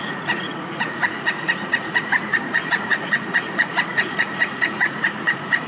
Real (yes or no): no